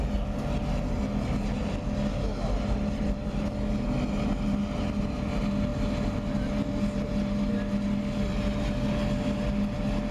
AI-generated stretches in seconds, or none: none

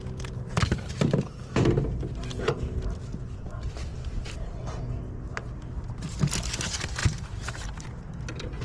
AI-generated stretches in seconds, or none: none

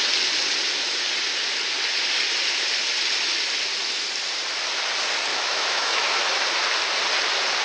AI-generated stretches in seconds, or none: 5.3-6.2

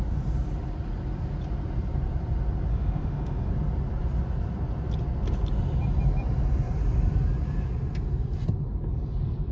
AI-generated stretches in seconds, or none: 2.7-3.5

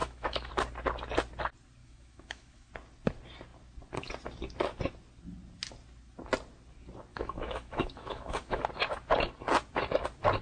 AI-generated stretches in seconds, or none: 0.0-0.5; 1.8-2.7; 7.1-8.6

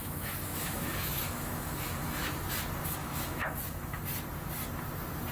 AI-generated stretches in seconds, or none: 0.0-2.2; 3.0-4.0

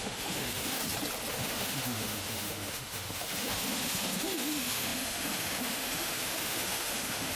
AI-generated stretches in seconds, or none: 0.0-0.8; 1.3-7.4

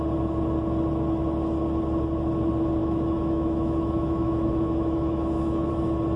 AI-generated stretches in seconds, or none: 2.8-5.7